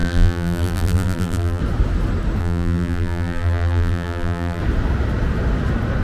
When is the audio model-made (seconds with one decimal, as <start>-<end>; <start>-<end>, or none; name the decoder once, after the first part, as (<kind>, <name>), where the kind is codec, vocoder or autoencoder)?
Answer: 0.0-1.6 (vocoder, BigVGAN v2); 2.4-4.6